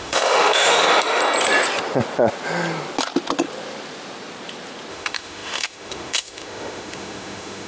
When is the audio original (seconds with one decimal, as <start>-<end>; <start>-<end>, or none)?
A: 1.2-4.9